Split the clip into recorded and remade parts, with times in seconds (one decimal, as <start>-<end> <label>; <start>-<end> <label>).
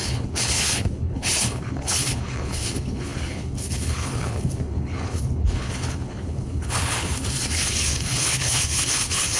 0.0-9.4 remade